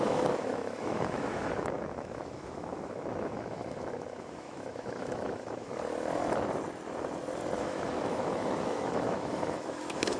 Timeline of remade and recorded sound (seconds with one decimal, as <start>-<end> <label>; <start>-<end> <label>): 0.0-5.7 remade; 5.7-7.6 recorded; 7.6-10.2 remade